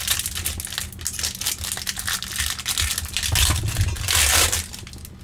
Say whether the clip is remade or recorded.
recorded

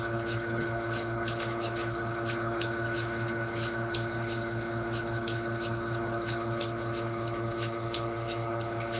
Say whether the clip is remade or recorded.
remade